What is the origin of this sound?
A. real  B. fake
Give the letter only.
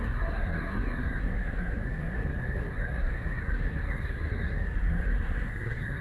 B